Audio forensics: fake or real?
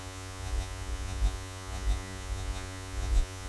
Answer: fake